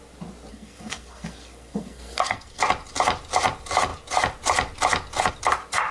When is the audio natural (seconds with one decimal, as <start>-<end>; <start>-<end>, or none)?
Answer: 0.0-0.5; 2.6-5.9